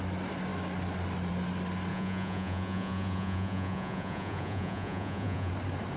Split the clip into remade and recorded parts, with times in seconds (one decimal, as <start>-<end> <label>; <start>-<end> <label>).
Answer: 0.0-1.9 recorded; 1.9-5.5 remade; 5.5-6.0 recorded